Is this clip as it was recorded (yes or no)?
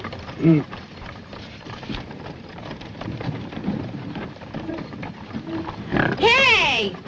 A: no